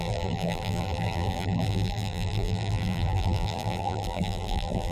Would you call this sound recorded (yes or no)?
no